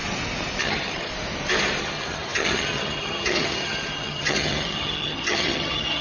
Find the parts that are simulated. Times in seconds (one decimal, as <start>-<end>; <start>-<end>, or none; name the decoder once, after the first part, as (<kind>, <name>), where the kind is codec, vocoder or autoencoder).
0.6-1.1 (vocoder, HiFi-GAN); 1.8-6.0